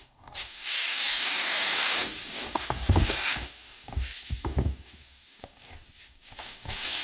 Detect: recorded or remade remade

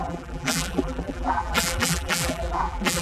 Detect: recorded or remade remade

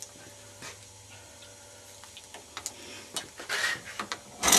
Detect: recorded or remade recorded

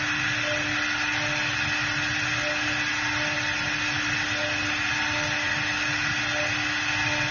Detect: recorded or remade recorded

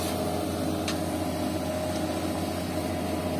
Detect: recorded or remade recorded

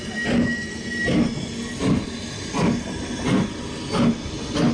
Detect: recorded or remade recorded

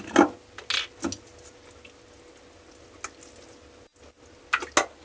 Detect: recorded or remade recorded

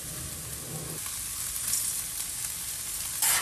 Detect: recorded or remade recorded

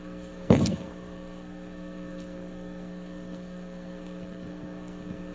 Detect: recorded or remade remade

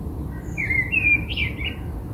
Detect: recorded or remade recorded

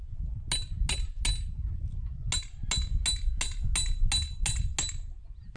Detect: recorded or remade recorded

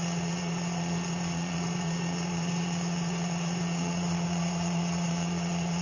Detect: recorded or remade remade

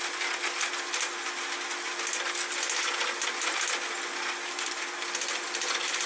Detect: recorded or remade recorded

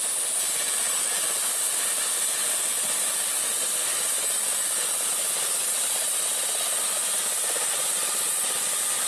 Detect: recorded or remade recorded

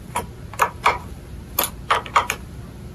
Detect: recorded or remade recorded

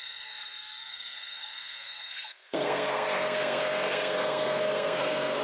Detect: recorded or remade remade